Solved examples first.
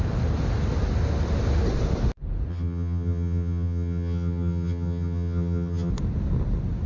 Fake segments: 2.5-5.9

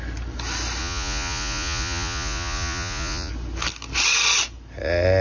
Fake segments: 0.8-3.3

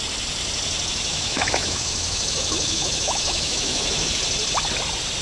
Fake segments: 1.1-4.2

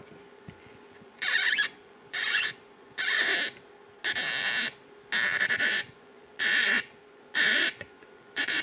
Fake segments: 0.0-3.3; 5.4-8.6

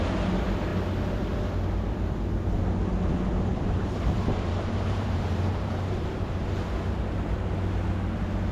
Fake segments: 3.5-6.4

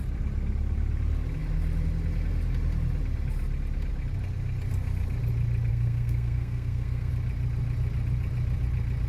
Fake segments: 5.7-7.1